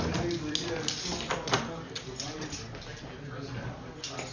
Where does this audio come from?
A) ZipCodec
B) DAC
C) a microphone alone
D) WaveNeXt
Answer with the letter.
C